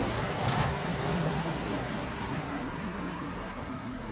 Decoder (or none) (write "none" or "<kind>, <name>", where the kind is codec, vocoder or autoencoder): codec, SNAC